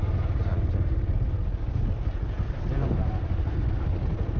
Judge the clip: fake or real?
real